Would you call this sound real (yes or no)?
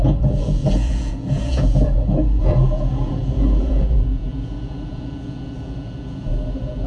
no